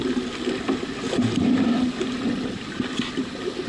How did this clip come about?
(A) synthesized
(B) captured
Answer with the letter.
B